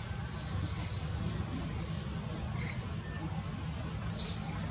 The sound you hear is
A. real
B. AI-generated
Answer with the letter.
A